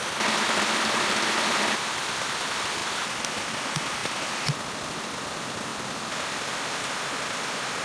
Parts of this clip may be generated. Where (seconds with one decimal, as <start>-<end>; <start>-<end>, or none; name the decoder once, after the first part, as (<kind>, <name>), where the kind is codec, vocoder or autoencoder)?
none